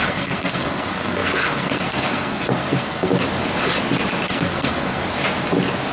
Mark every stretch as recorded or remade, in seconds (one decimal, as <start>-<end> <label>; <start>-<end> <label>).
0.0-3.1 remade; 3.1-4.3 recorded; 4.3-5.0 remade; 5.0-5.9 recorded